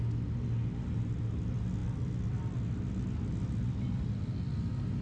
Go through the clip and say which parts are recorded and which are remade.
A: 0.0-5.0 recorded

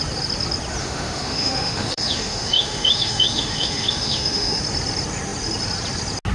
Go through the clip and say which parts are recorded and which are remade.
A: 0.0-0.8 recorded; 0.8-4.6 remade; 4.6-6.3 recorded

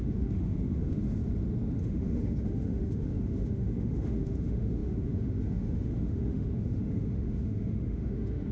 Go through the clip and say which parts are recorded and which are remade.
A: 0.0-1.2 remade; 1.2-1.8 recorded; 1.8-8.5 remade

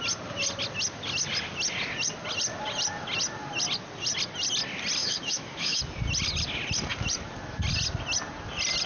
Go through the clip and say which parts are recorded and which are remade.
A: 0.0-5.0 recorded; 5.0-5.8 remade; 5.8-8.9 recorded

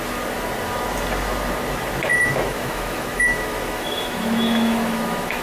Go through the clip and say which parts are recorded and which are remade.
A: 0.0-2.1 recorded; 2.1-5.4 remade

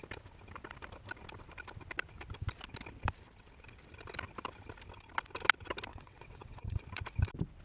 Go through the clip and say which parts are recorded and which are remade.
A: 0.0-5.9 recorded; 5.9-6.8 remade; 6.8-7.6 recorded

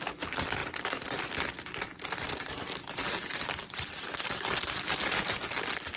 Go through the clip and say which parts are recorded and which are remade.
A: 0.0-6.0 recorded